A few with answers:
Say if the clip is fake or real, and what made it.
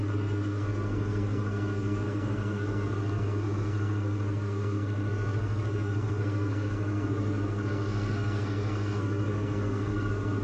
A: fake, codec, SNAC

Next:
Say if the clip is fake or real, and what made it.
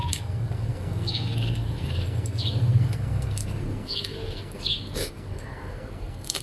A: fake, codec, SNAC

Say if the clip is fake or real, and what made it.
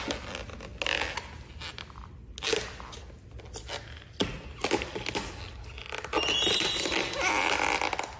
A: real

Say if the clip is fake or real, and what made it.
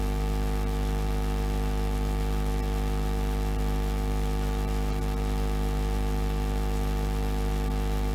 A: real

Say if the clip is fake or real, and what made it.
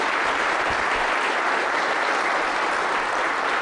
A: real